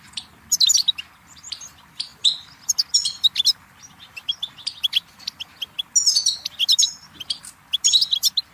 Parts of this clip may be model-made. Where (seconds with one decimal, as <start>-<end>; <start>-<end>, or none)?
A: none